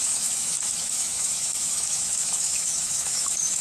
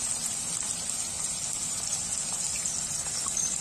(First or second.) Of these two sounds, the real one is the second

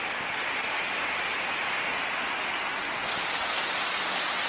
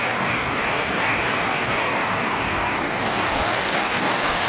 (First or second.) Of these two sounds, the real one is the first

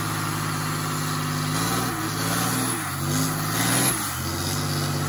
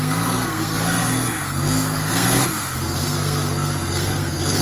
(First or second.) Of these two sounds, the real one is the first